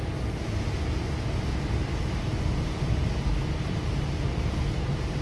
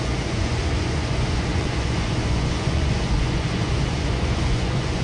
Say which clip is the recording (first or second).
first